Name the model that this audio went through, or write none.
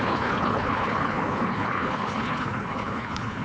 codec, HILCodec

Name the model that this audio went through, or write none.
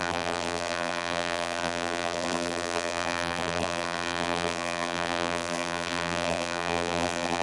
vocoder, BigVGAN v2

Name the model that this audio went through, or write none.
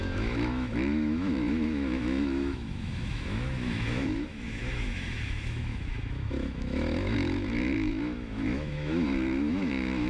autoencoder, DAC-VAE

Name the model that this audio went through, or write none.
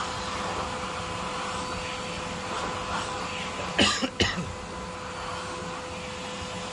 none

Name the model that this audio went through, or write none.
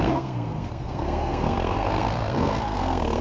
codec, SNAC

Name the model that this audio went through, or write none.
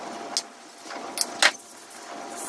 none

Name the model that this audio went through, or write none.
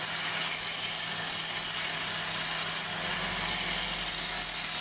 none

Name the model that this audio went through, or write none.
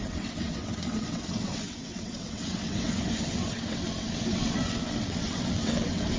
vocoder, WaveNeXt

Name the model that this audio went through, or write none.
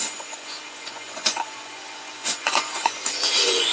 vocoder, Vocos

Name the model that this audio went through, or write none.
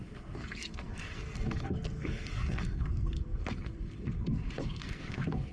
codec, SNAC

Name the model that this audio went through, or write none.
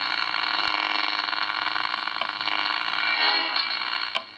none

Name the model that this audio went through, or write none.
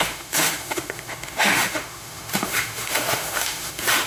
autoencoder, DAC-VAE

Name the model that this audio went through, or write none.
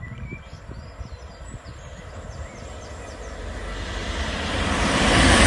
none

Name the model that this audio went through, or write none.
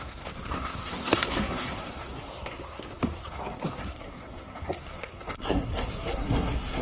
codec, SNAC